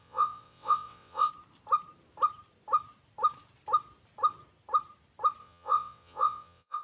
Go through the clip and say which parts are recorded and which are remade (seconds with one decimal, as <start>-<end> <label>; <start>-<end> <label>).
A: 0.0-1.3 remade; 1.3-5.4 recorded; 5.4-6.8 remade